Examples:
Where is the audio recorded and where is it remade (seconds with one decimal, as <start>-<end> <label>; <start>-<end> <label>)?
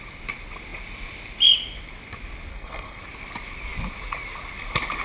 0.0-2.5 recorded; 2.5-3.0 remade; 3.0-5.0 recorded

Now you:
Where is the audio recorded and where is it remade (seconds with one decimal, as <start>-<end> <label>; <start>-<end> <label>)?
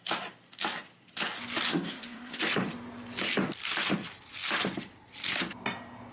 0.0-1.7 recorded; 1.7-2.4 remade; 2.4-6.1 recorded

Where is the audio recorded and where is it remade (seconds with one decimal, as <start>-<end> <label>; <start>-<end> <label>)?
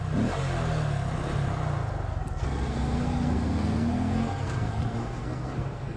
0.0-2.1 recorded; 2.1-6.0 remade